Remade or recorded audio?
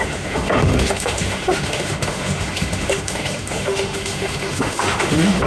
remade